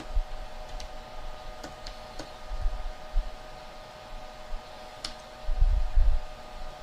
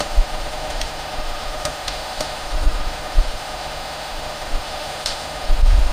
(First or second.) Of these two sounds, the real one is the first